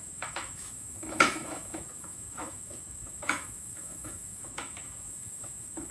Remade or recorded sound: remade